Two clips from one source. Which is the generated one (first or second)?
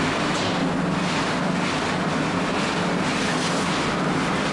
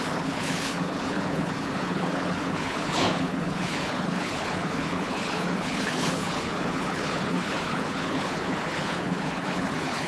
second